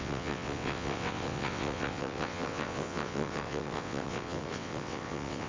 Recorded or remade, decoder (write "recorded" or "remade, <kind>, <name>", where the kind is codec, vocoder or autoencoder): remade, vocoder, WaveNeXt